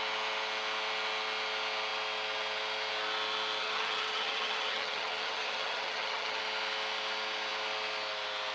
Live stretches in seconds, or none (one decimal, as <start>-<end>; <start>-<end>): 0.0-3.6; 6.4-8.5